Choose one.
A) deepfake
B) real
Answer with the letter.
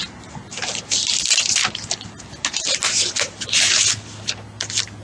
B